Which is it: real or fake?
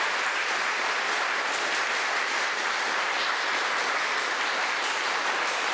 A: fake